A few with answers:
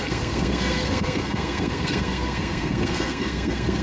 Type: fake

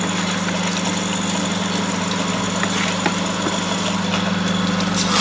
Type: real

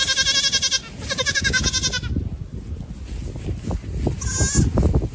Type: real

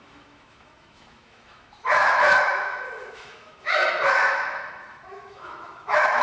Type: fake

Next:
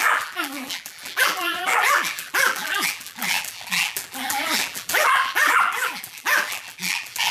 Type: fake